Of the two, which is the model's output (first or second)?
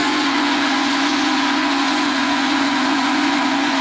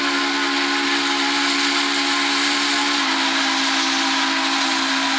first